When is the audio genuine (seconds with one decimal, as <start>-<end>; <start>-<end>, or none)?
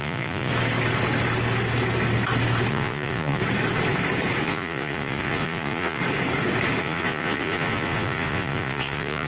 0.5-2.7; 3.4-4.4; 6.0-6.8